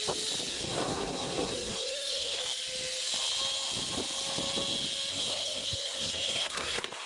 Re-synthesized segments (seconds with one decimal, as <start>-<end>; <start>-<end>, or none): 0.5-2.4; 5.1-7.1